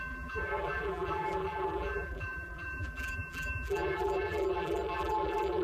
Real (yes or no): no